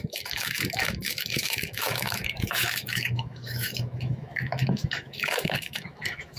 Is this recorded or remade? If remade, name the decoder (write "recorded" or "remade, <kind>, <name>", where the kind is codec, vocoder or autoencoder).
remade, autoencoder, DAC-VAE